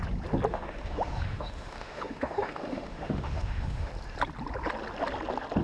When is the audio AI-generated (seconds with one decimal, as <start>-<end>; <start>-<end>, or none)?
0.5-3.9